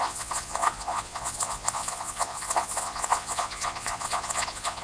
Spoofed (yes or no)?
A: yes